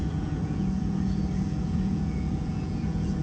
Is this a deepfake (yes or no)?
yes